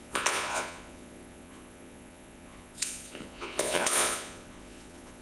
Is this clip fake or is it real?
fake